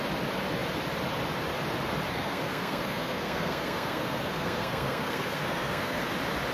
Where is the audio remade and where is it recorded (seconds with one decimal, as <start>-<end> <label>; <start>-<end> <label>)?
0.0-2.1 recorded; 2.1-6.0 remade; 6.0-6.5 recorded